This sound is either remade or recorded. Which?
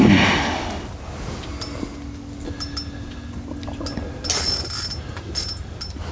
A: recorded